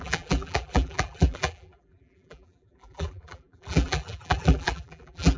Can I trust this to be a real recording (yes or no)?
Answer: no